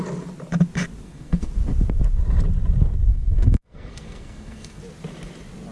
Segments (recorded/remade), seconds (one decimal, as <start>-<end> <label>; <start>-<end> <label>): 0.0-1.0 recorded; 1.0-1.5 remade; 1.5-3.1 recorded; 3.1-4.8 remade; 4.8-5.7 recorded